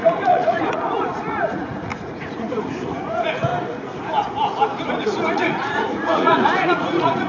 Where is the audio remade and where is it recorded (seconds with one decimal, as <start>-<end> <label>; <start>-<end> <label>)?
0.0-3.5 remade; 3.5-4.9 recorded; 4.9-7.3 remade